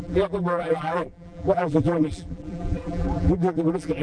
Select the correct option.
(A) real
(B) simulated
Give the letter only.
B